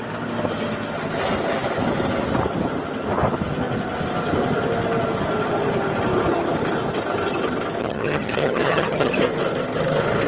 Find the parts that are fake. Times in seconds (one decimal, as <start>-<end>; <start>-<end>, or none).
7.8-9.1